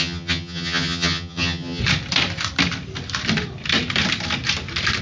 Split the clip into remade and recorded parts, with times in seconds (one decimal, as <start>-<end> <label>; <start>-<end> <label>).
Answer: 0.0-1.8 remade; 1.8-5.0 recorded